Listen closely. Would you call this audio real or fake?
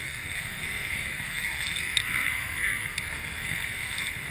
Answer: fake